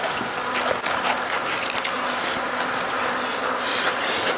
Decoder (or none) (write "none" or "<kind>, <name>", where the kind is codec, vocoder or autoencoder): none